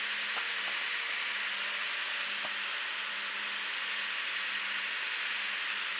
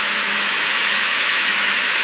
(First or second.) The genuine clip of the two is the first